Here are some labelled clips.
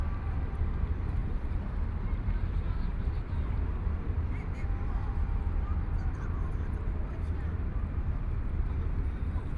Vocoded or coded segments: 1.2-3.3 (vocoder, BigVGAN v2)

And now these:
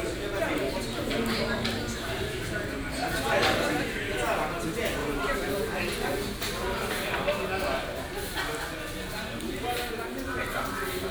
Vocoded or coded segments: 5.0-5.5 (vocoder, BigVGAN v2)

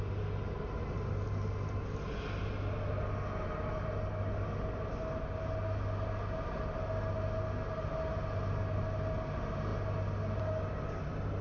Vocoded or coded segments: none

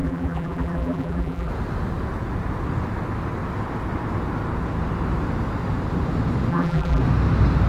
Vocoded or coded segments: 0.0-1.5 (vocoder, BigVGAN v2); 6.5-7.0

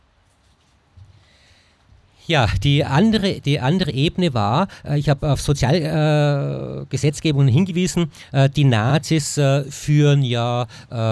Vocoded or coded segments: 3.2-3.9 (vocoder, BigVGAN v2); 8.9-11.1

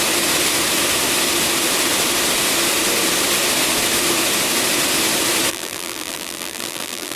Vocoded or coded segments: 5.5-7.2 (vocoder, BigVGAN v2)

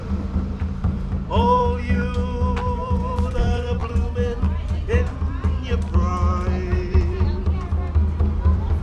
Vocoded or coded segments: 0.0-1.6 (vocoder, BigVGAN v2); 2.8-6.1; 6.9-7.4; 8.2-8.8